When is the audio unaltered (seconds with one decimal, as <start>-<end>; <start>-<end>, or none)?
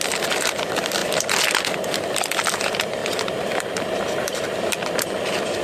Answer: 0.0-3.0; 4.7-5.6